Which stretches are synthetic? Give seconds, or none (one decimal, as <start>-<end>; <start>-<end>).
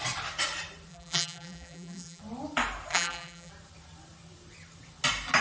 0.9-2.2; 2.9-3.5